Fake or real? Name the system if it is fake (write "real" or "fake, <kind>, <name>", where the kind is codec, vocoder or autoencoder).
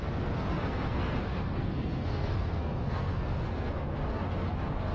fake, codec, SNAC